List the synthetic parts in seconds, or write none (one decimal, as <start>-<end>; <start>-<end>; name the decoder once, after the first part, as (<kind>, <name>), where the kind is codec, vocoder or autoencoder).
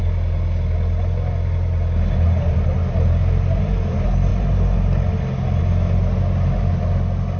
none